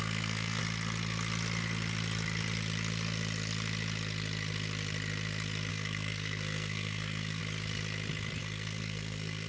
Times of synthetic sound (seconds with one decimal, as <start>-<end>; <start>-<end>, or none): 0.0-0.6; 5.7-7.4; 8.4-9.5